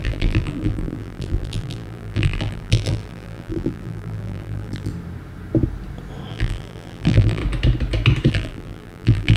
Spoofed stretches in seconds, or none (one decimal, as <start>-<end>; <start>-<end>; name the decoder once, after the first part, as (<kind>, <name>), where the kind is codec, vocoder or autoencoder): 0.0-4.9 (vocoder, BigVGAN v2); 6.3-7.4; 8.3-9.4